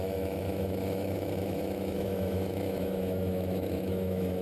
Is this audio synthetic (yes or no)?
yes